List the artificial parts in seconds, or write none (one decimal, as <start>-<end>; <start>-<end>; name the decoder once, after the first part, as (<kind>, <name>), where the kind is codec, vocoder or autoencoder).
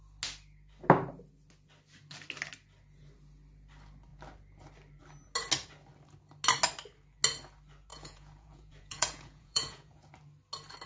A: 7.9-10.1 (vocoder, Vocos)